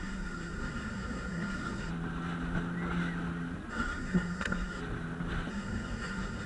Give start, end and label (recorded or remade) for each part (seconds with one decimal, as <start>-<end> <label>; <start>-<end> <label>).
0.0-1.9 remade; 1.9-3.7 recorded; 3.7-4.8 remade; 4.8-5.5 recorded; 5.5-6.5 remade